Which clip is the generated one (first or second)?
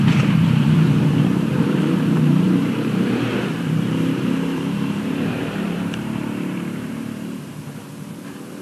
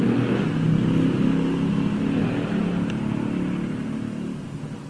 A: first